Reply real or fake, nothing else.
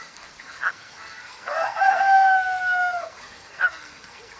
fake